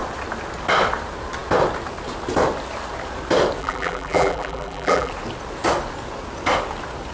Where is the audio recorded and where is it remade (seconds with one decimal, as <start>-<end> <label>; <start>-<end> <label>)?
0.0-3.6 recorded; 3.6-5.1 remade; 5.1-7.1 recorded